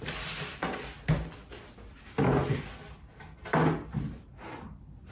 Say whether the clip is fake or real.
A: real